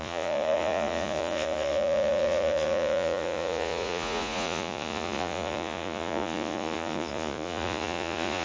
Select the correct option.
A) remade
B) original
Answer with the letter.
A